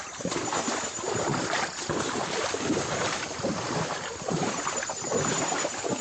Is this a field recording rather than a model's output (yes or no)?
yes